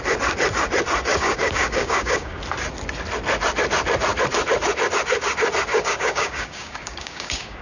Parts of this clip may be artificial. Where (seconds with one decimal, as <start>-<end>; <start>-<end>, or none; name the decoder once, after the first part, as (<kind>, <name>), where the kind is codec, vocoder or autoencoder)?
1.1-2.4 (codec, DAC); 5.7-7.6